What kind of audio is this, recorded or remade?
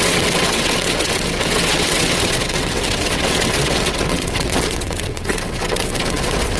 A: remade